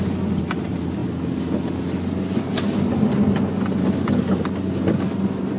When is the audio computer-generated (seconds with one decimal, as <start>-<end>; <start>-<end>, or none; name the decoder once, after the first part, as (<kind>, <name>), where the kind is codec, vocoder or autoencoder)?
none